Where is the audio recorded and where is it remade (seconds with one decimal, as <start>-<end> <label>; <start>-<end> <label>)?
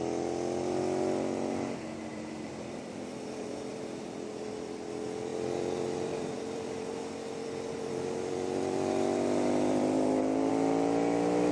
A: 0.0-2.1 recorded; 2.1-4.0 remade; 4.0-5.3 recorded; 5.3-10.5 remade; 10.5-11.5 recorded